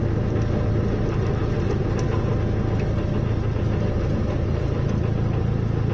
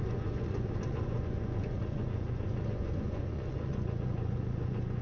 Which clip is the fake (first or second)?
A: second